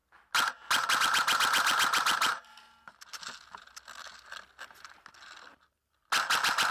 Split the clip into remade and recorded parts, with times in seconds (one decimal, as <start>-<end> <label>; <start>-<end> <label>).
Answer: 0.0-6.7 recorded